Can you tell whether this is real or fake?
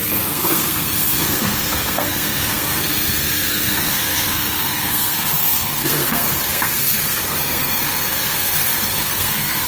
fake